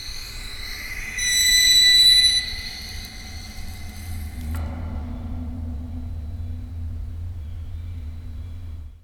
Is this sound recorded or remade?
remade